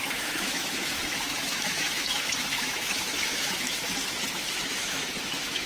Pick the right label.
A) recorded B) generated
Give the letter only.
B